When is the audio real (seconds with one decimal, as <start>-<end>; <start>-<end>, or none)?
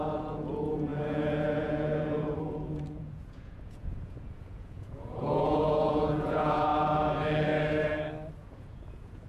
6.7-8.4